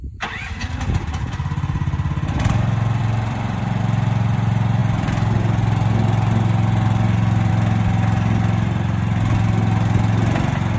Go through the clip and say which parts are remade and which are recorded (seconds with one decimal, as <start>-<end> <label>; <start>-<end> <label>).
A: 0.0-3.0 recorded; 3.0-3.8 remade; 3.8-10.8 recorded